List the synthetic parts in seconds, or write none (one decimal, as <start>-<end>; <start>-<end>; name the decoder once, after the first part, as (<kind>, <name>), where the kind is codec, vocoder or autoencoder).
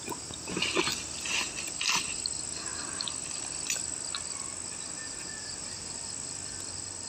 none